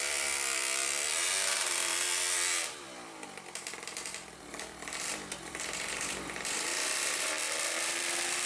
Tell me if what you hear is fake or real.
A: fake